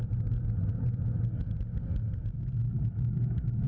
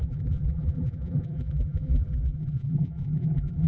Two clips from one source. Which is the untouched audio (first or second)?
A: first